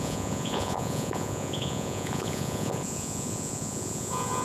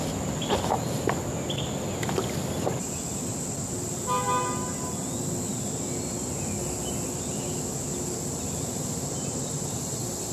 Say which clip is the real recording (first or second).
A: second